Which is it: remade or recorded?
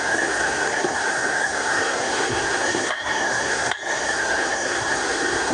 remade